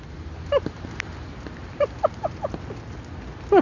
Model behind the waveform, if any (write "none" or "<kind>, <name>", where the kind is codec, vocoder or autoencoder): none